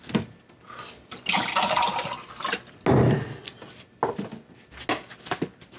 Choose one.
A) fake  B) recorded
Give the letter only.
B